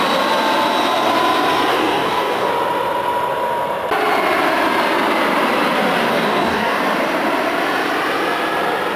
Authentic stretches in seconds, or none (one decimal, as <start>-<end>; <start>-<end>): 0.0-1.7; 2.5-6.1; 6.8-9.0